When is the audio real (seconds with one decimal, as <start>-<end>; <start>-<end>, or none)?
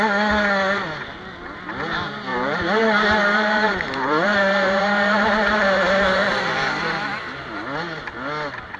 0.0-2.3; 6.3-8.8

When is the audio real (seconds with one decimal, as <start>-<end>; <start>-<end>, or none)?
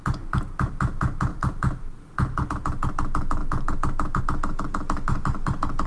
0.0-5.9